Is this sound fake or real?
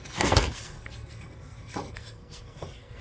fake